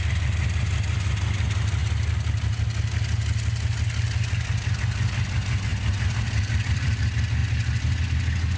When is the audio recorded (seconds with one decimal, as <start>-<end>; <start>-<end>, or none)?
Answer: 0.0-5.7; 7.0-8.6